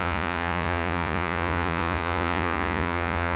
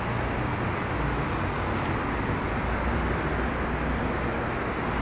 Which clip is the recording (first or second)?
second